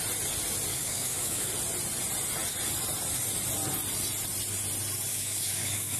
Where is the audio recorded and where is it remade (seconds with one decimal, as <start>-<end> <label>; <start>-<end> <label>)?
0.0-0.7 recorded; 0.7-1.5 remade; 1.5-5.1 recorded; 5.1-6.0 remade

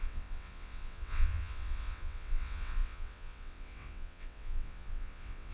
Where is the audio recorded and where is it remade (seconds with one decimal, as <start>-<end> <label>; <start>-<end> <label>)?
0.0-5.5 remade

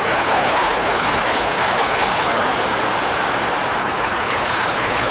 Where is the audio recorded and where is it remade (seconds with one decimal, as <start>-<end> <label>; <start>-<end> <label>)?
0.0-2.5 remade; 2.5-3.8 recorded; 3.8-5.1 remade